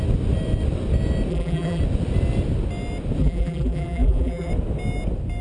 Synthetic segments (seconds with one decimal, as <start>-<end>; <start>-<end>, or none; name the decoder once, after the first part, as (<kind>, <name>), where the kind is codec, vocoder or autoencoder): 1.3-1.8 (vocoder, BigVGAN v2); 3.2-4.5